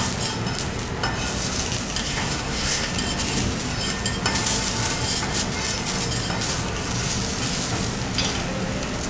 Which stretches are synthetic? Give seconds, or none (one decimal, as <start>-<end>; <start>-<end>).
2.0-2.9